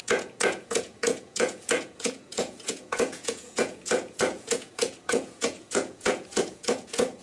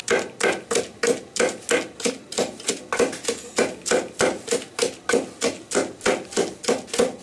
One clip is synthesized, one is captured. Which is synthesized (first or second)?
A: first